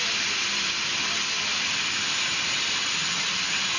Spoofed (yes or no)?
no